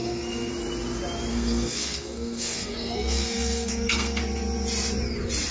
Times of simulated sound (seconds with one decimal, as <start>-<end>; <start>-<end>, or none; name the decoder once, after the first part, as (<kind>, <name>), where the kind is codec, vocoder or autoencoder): 0.0-0.5 (codec, SNAC); 1.3-4.2